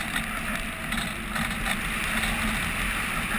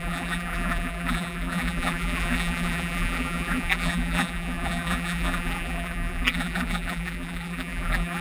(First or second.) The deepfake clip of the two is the second